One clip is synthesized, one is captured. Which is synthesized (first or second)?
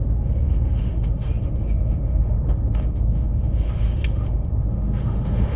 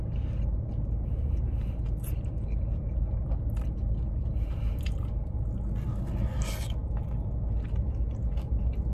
first